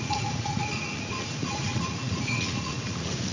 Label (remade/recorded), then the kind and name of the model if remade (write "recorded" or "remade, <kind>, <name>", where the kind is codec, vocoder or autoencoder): remade, vocoder, Vocos